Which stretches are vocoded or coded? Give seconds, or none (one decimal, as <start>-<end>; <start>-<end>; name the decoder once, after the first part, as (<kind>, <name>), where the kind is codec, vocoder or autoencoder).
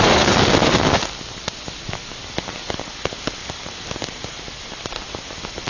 3.4-4.8 (vocoder, BigVGAN v2)